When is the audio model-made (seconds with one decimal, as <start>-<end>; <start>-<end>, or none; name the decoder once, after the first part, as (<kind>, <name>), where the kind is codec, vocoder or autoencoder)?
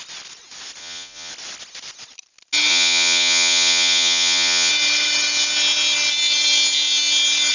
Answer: 0.8-1.3 (vocoder, Vocos); 2.7-4.7